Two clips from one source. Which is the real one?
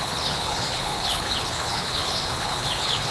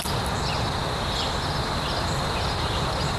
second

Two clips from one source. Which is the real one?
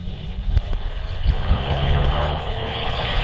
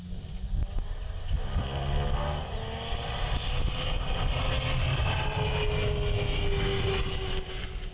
second